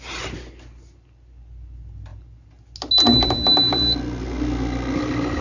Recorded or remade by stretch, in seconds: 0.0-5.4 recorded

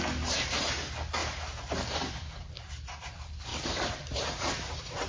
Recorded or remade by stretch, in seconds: 0.0-3.5 recorded; 3.5-4.2 remade; 4.2-5.1 recorded

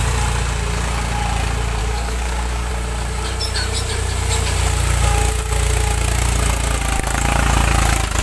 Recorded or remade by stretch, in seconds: 0.0-1.8 recorded; 1.8-2.7 remade; 2.7-8.2 recorded

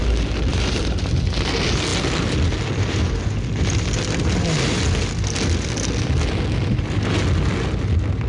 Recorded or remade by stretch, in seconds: 0.0-0.5 recorded; 0.5-1.0 remade; 1.0-8.3 recorded

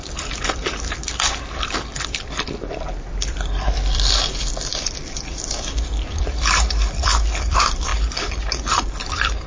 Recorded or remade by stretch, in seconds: 0.0-9.5 remade

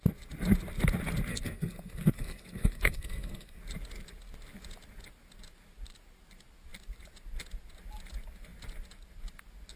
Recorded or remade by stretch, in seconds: 0.0-1.3 recorded; 1.3-3.6 remade; 3.6-9.8 recorded